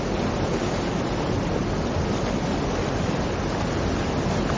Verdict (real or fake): real